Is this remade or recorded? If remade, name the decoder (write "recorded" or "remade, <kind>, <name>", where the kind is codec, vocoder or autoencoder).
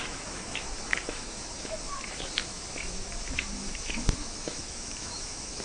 remade, autoencoder, DAC-VAE